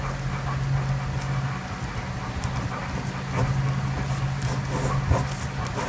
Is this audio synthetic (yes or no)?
no